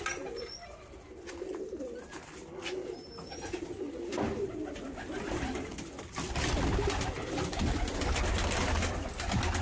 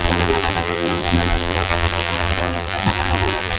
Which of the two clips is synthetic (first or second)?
second